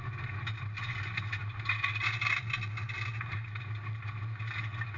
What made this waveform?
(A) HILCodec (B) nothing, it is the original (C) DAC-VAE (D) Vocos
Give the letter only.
B